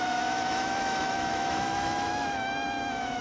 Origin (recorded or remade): remade